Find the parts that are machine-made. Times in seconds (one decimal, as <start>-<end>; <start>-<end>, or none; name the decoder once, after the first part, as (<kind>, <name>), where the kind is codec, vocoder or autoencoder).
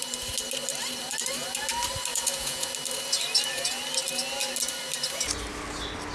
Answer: 2.1-2.7 (vocoder, Vocos)